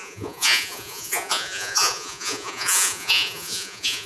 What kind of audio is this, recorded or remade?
remade